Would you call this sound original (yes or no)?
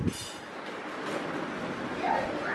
yes